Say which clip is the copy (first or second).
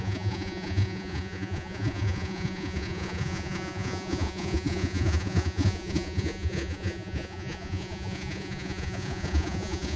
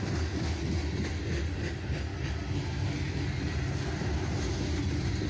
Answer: first